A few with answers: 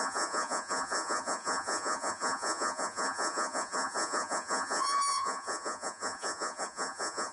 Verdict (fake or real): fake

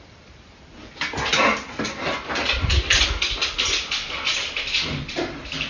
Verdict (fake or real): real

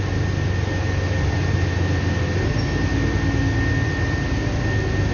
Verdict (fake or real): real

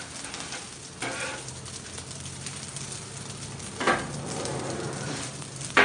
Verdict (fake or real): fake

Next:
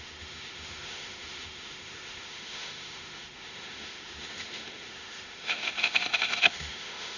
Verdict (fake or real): fake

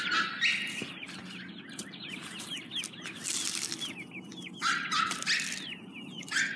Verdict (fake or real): real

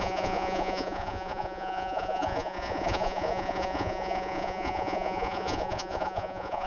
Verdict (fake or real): fake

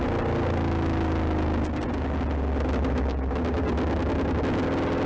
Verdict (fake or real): real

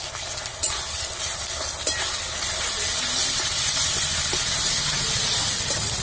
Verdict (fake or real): real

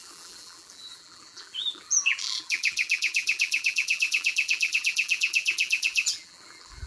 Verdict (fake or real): fake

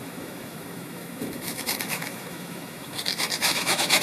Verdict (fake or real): fake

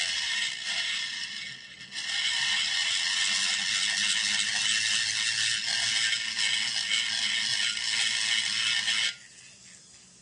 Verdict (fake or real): real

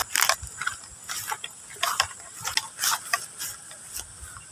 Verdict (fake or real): real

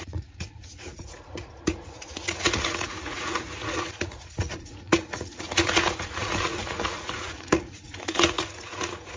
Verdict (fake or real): fake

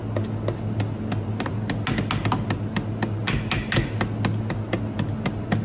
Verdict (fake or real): real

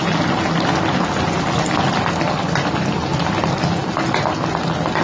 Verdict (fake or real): real